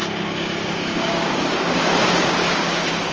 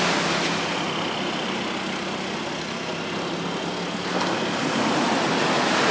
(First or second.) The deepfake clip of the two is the first